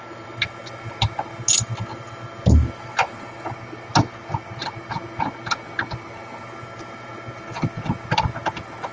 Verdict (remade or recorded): recorded